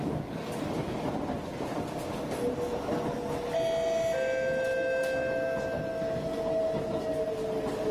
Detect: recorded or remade recorded